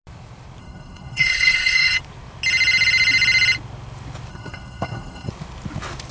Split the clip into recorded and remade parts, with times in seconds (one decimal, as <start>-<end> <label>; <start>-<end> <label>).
0.0-0.6 recorded; 0.6-2.0 remade; 2.0-4.3 recorded; 4.3-5.3 remade; 5.3-6.1 recorded